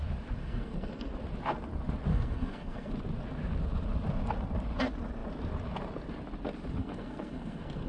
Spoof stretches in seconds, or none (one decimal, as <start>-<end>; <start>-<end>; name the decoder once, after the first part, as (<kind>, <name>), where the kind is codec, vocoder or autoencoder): 0.4-1.1 (codec, SNAC); 2.1-2.9; 6.8-7.9